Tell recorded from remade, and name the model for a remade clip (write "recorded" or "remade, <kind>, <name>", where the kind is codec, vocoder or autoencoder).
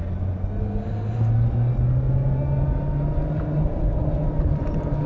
recorded